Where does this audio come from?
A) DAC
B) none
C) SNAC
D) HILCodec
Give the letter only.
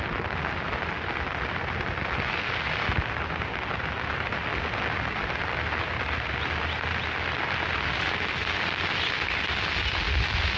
B